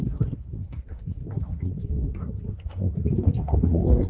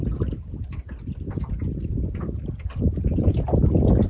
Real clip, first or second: second